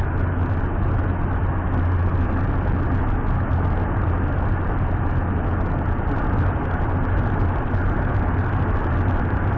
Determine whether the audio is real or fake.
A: real